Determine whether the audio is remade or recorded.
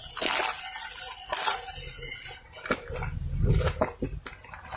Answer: recorded